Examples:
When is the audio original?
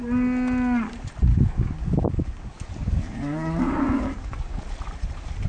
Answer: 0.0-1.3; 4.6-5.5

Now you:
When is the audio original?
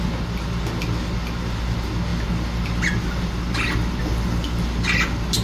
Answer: 0.0-5.4